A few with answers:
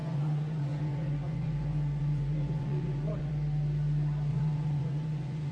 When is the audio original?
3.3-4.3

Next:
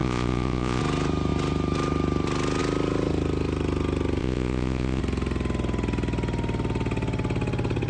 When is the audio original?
0.8-4.2; 5.0-7.9

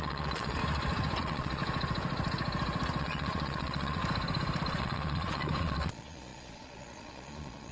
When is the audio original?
0.6-1.2; 1.6-3.0; 4.0-4.8

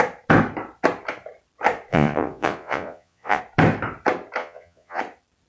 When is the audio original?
0.0-1.9; 3.4-4.4; 5.0-5.5